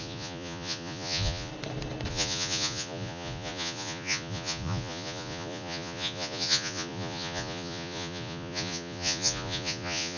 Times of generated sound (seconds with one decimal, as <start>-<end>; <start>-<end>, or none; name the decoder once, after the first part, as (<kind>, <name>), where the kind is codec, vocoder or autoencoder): 0.0-1.5 (vocoder, Vocos); 2.1-10.2